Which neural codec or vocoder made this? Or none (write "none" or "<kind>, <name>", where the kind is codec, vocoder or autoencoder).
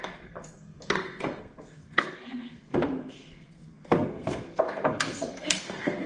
codec, SNAC